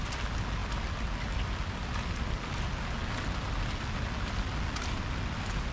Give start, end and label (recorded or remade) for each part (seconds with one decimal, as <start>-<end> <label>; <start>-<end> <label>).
0.0-5.7 recorded